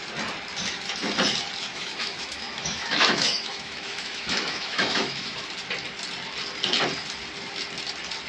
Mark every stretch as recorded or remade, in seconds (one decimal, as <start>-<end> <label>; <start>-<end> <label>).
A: 0.0-1.7 recorded; 1.7-5.4 remade; 5.4-8.3 recorded